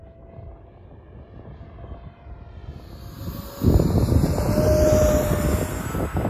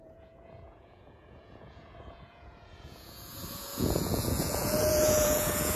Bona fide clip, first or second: first